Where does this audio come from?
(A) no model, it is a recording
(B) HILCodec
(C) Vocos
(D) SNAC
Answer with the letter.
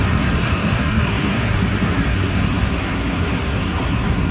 D